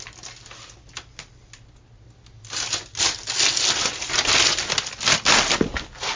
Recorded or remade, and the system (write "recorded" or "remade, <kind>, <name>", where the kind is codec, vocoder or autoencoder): recorded